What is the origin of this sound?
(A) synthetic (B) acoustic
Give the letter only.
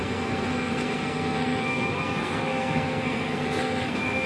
A